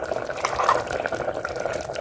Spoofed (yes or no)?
no